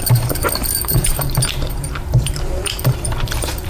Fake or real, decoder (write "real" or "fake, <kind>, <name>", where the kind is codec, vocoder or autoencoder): fake, vocoder, BigVGAN v2